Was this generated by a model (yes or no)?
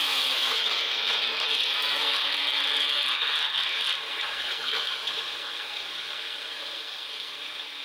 yes